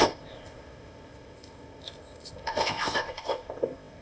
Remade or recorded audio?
remade